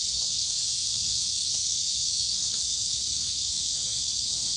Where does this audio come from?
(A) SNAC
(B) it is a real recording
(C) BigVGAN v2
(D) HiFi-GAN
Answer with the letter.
A